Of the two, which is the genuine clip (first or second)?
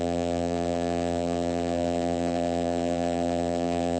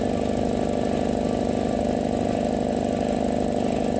second